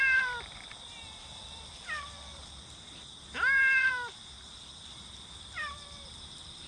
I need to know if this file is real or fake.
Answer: fake